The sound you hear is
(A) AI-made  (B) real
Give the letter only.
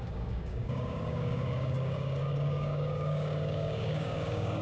A